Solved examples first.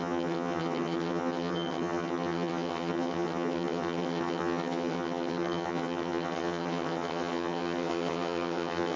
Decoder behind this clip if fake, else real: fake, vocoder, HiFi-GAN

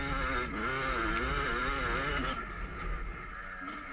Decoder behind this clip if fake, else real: real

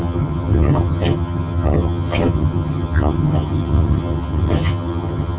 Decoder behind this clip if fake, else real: fake, vocoder, HiFi-GAN